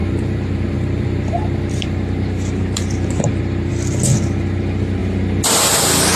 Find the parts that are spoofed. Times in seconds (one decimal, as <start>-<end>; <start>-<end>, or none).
0.0-3.7